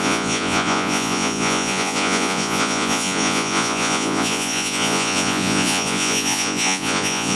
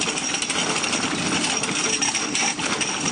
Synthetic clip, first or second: first